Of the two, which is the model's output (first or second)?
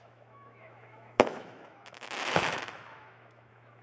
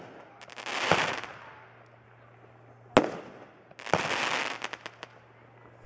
first